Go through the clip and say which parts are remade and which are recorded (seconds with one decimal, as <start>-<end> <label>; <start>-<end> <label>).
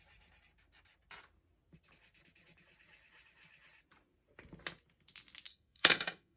0.0-5.5 recorded; 5.5-6.4 remade